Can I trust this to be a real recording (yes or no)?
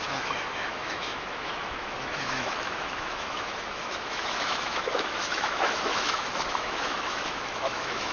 no